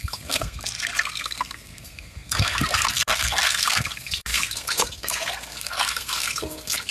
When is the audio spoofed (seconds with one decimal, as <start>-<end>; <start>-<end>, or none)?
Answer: 0.0-6.9